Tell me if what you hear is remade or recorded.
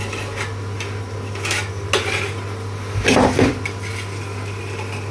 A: recorded